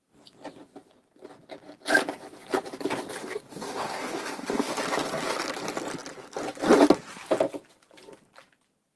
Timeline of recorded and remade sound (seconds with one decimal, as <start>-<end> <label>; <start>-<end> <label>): 0.0-3.2 recorded; 3.2-4.7 remade; 4.7-9.0 recorded